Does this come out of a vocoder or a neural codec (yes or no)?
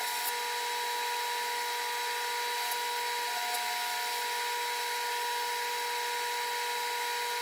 no